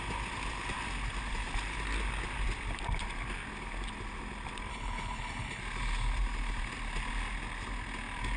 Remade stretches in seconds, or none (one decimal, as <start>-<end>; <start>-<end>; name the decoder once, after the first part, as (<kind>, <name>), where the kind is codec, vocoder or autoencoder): 4.7-5.6 (codec, HILCodec)